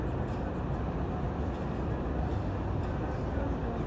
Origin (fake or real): real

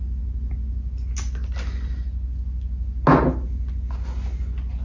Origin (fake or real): real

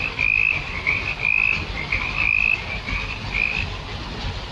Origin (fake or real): real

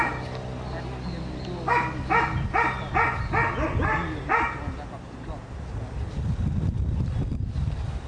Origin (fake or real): real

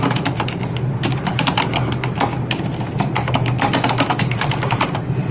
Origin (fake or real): real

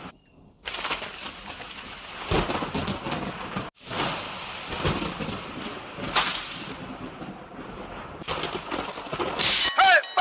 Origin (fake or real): real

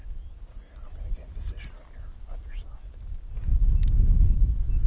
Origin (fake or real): real